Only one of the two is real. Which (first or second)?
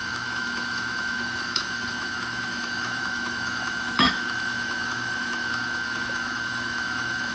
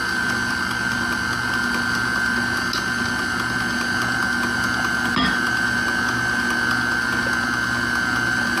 second